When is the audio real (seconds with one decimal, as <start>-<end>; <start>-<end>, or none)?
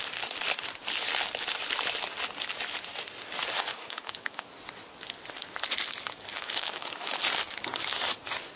0.0-3.7; 4.5-6.3; 7.2-8.6